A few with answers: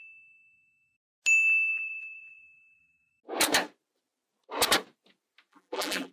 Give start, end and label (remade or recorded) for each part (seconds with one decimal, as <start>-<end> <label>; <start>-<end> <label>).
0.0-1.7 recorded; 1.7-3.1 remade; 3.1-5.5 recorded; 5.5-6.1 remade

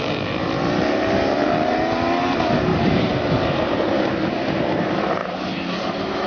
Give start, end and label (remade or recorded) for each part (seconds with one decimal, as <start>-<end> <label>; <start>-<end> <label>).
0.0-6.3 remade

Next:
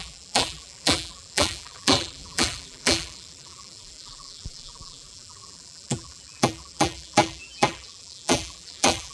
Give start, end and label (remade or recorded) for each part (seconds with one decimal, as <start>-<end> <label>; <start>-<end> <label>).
0.0-9.1 remade